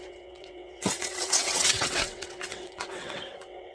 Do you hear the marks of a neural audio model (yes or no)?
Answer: yes